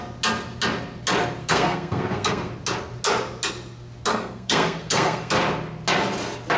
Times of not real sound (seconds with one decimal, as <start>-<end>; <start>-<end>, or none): 1.4-2.5; 4.1-5.3

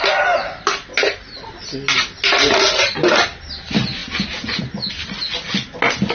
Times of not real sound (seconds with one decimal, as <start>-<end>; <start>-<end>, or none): none

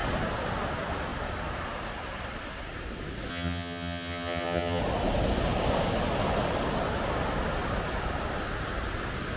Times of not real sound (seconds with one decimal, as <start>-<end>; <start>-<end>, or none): 3.3-4.8

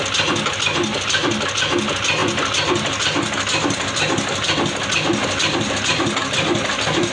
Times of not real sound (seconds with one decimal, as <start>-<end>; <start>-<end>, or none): none

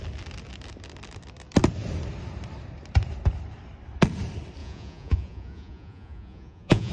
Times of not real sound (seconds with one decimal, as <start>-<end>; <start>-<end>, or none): 4.6-6.9

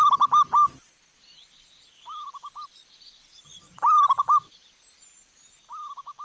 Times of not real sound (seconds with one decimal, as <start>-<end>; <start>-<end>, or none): none

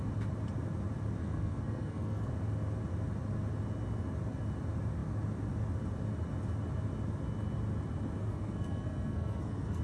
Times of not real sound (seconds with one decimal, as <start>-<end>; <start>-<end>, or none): 1.2-2.3; 8.2-9.8

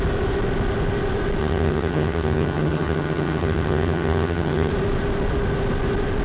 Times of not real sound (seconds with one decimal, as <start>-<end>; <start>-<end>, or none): 1.4-4.7